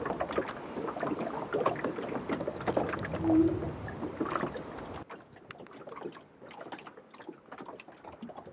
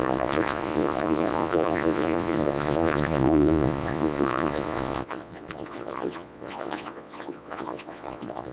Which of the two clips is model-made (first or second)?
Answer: second